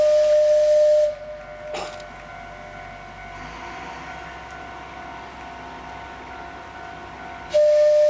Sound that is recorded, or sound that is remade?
recorded